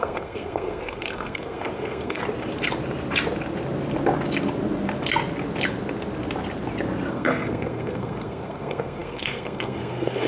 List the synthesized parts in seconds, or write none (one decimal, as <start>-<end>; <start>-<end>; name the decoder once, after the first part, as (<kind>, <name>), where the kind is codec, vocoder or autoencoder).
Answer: 0.0-2.2 (codec, SNAC); 7.1-10.3